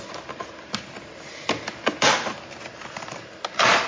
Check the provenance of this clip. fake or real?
real